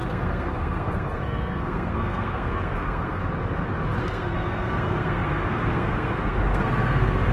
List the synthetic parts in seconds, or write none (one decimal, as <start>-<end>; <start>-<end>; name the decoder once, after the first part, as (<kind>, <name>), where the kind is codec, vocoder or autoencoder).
0.0-3.2 (codec, SNAC); 4.0-7.3